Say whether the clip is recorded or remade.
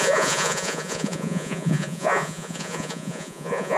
remade